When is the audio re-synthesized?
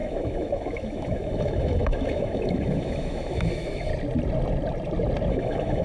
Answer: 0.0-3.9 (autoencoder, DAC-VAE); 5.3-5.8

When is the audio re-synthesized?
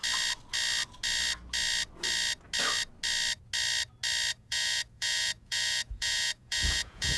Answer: 4.3-7.2 (vocoder, Vocos)